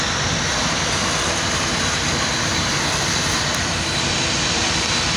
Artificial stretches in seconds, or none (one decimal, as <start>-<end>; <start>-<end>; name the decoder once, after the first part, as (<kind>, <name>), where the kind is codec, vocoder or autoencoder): 2.5-4.7 (vocoder, BigVGAN v2)